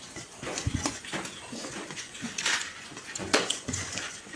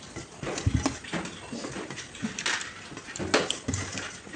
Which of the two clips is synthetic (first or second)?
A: first